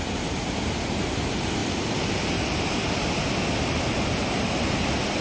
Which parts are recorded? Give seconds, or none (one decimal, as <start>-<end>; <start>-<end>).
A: 0.0-5.2